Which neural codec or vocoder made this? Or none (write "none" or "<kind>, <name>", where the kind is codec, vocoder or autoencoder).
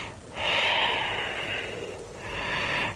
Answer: none